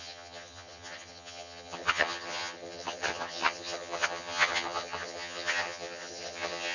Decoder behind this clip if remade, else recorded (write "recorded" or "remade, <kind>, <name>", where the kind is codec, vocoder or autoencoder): remade, vocoder, HiFi-GAN